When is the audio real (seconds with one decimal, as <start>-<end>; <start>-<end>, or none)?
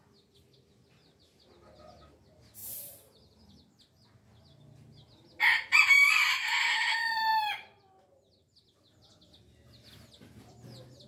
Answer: 0.0-11.1